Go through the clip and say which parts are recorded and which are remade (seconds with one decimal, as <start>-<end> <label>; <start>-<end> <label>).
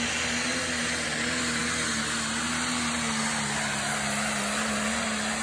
0.0-5.4 recorded